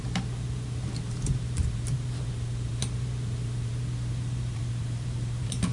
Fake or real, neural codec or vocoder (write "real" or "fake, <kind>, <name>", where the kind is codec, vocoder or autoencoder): fake, vocoder, BigVGAN v2